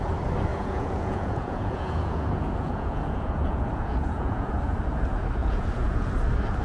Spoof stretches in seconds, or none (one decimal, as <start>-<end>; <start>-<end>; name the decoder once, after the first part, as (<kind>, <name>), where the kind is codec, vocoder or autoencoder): 0.5-4.5 (vocoder, Vocos); 5.4-6.1